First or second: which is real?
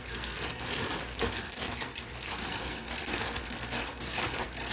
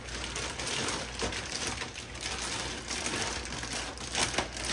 second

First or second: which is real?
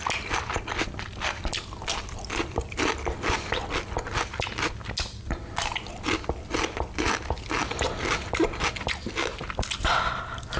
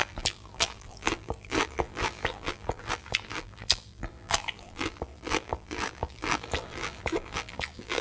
first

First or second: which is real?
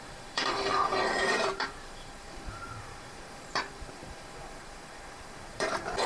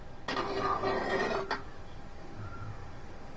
second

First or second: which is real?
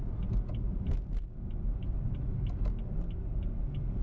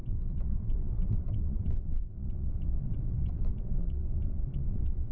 first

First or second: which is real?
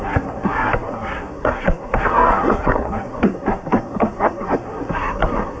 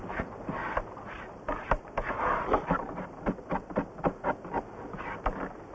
second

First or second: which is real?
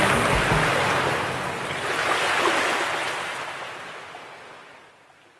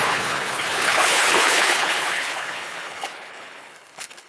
first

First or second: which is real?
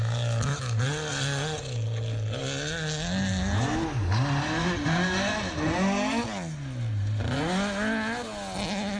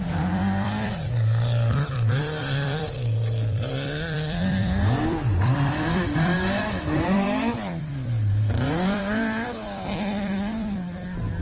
first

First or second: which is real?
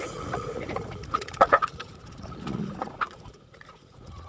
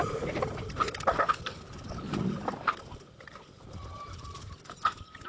second